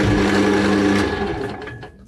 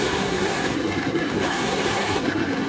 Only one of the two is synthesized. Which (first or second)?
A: second